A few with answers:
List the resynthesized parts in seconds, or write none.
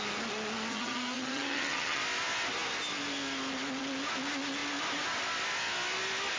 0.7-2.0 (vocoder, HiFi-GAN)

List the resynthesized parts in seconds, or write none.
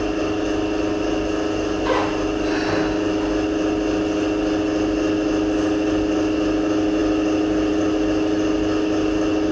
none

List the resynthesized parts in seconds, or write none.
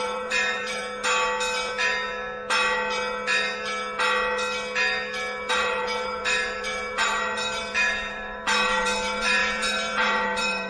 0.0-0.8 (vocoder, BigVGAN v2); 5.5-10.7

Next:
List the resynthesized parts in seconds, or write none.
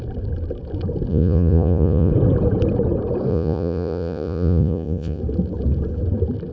1.1-2.1 (vocoder, Vocos); 3.3-5.2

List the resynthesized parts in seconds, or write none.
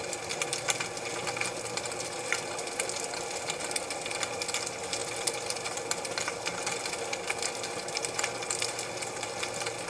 none